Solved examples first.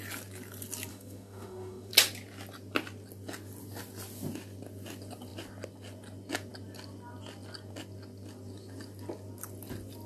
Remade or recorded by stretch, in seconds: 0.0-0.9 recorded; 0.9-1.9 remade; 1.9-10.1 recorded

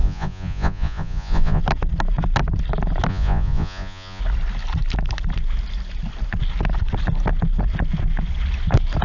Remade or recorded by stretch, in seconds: 0.0-1.6 remade; 1.6-3.1 recorded; 3.1-4.2 remade; 4.2-9.0 recorded

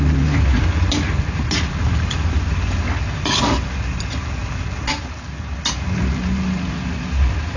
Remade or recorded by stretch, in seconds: 0.0-7.6 recorded

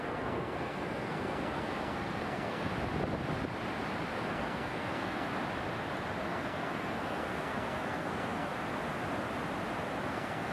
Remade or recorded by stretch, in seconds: 0.0-2.7 remade; 2.7-4.3 recorded; 4.3-5.3 remade; 5.3-6.3 recorded; 6.3-8.5 remade; 8.5-10.1 recorded; 10.1-10.5 remade